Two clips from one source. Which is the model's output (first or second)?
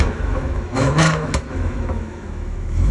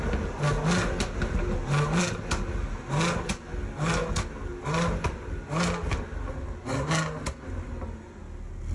first